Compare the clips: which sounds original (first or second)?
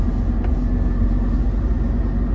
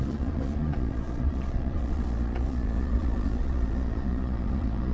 first